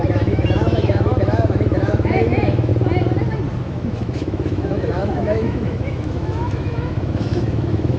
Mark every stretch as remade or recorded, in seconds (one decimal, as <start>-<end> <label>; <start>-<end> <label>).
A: 0.0-2.7 remade; 2.7-3.6 recorded; 3.6-8.0 remade